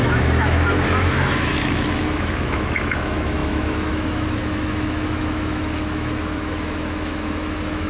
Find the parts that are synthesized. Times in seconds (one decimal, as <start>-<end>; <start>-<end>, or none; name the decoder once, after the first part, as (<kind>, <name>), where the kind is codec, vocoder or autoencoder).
0.0-7.9 (autoencoder, DAC-VAE)